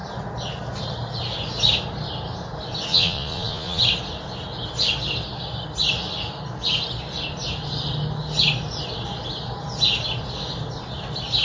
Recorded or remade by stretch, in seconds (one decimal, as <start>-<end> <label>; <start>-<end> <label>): 0.0-2.9 recorded; 2.9-3.8 remade; 3.8-11.4 recorded